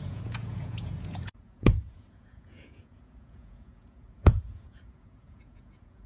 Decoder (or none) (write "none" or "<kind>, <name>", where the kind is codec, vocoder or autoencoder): vocoder, Vocos